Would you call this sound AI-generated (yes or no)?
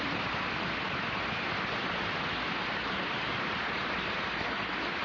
no